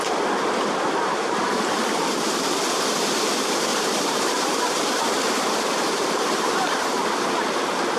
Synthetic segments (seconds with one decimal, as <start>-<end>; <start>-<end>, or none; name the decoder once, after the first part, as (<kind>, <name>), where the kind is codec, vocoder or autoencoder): 1.1-1.8 (vocoder, BigVGAN v2); 3.7-7.0